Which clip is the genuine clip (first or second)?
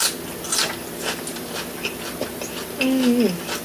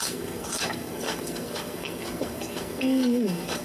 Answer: first